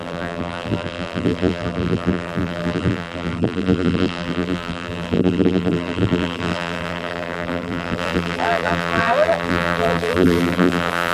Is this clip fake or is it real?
fake